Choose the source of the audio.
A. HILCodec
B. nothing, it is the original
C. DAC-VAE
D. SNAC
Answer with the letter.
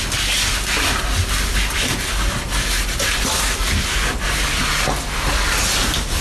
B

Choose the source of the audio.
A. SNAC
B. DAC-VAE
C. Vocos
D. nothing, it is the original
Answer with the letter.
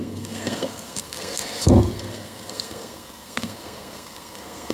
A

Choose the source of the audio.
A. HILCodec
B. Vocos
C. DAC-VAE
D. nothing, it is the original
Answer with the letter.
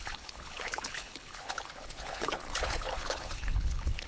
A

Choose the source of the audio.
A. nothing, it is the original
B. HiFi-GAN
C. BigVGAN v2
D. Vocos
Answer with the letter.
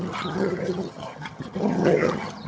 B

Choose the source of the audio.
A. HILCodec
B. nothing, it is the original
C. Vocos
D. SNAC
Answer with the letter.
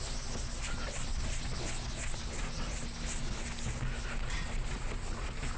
B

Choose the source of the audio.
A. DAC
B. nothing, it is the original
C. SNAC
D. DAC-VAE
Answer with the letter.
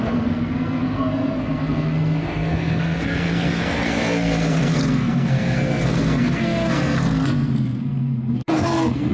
C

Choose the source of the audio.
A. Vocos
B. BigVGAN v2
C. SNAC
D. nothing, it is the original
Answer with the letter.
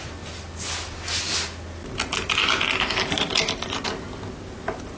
D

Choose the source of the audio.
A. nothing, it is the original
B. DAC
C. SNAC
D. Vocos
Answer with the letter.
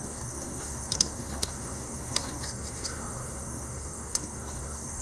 C